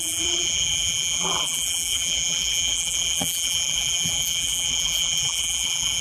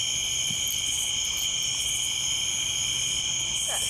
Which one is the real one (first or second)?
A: second